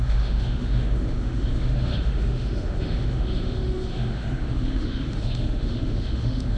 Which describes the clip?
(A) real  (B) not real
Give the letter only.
B